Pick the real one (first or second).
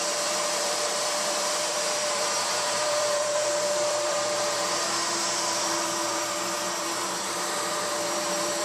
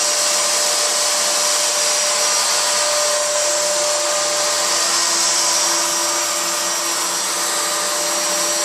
second